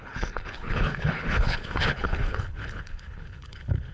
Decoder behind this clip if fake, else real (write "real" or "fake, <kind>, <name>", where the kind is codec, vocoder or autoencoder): fake, codec, HILCodec